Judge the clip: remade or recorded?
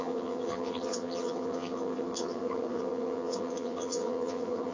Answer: remade